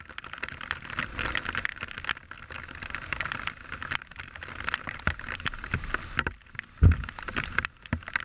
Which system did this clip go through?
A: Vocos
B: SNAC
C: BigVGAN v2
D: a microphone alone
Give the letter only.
D